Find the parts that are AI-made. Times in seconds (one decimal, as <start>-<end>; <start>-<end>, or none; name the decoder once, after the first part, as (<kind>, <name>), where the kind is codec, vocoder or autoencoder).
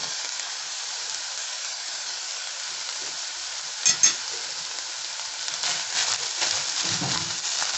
0.0-0.9 (codec, DAC); 1.4-2.5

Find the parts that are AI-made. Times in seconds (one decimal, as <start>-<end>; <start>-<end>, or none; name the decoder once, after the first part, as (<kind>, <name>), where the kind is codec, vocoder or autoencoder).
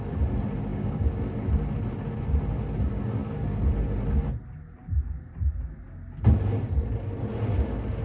0.7-1.2 (codec, DAC)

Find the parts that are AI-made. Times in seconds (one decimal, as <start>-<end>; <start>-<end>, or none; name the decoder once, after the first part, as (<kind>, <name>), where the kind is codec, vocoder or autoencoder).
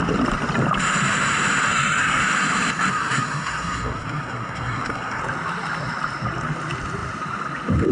1.7-2.2 (codec, SNAC); 2.9-5.2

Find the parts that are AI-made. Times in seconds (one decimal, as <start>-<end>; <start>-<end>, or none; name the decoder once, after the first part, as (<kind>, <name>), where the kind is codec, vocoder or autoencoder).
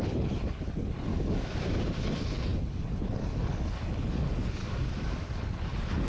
0.0-1.1 (codec, HILCodec); 2.0-4.6; 5.4-6.1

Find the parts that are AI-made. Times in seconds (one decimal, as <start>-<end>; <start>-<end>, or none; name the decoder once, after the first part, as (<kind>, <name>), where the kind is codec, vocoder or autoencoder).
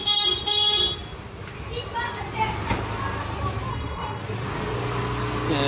3.7-4.2 (codec, SNAC)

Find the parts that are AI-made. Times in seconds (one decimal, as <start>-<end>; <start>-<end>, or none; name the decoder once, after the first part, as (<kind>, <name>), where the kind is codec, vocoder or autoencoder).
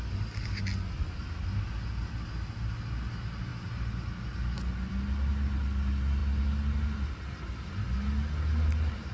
none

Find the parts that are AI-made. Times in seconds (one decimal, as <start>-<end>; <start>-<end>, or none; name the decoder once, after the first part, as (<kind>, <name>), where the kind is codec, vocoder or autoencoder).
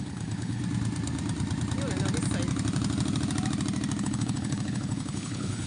0.0-0.6 (codec, HILCodec); 4.0-5.7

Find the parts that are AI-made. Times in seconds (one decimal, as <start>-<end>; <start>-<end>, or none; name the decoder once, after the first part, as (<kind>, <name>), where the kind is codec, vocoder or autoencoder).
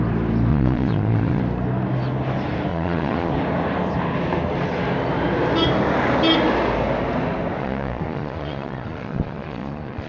0.5-1.4 (vocoder, Vocos); 2.7-3.3; 7.6-10.1